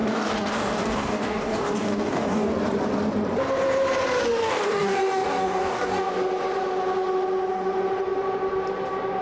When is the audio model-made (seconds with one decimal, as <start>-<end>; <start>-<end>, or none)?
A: 0.0-2.5; 4.4-6.1